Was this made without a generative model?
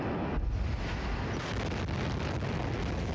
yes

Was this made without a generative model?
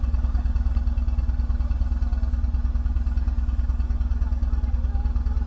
yes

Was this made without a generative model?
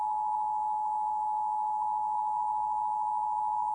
no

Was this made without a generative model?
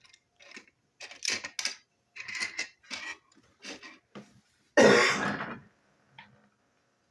yes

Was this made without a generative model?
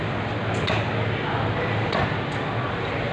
yes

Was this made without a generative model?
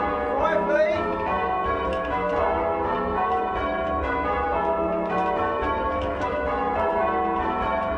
yes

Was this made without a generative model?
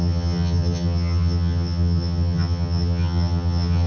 no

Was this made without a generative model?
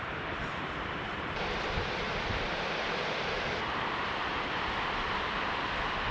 no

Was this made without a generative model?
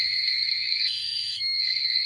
no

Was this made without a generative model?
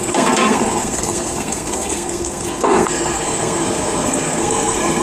no